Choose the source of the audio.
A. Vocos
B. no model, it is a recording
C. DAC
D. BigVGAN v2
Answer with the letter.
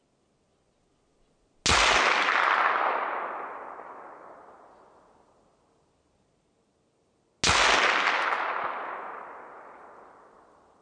B